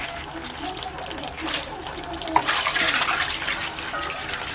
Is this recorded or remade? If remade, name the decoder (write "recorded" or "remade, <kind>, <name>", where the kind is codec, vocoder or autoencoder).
recorded